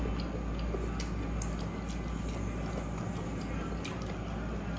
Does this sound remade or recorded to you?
recorded